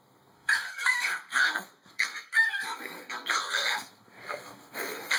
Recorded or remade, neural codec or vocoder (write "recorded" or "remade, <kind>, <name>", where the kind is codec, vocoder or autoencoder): remade, codec, SNAC